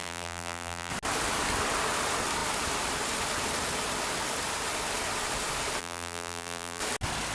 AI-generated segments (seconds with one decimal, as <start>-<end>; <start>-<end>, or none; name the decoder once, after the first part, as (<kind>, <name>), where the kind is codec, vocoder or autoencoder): 0.0-0.9 (vocoder, BigVGAN v2); 5.8-6.8